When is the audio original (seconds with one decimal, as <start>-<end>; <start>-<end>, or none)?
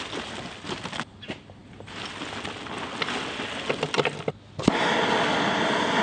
0.0-6.0